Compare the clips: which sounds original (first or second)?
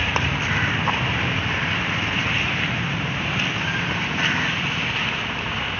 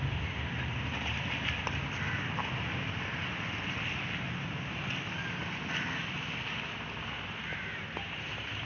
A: second